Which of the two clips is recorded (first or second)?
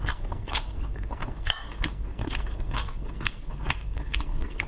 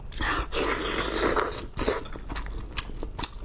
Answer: second